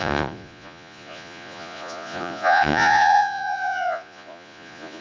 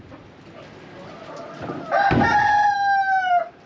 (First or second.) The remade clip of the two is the first